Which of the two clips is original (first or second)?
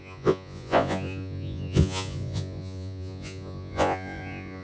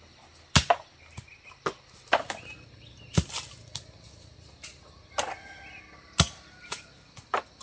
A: second